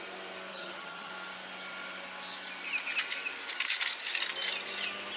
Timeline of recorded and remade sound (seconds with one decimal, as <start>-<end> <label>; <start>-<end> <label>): 0.0-0.5 recorded; 0.5-1.1 remade; 1.1-5.2 recorded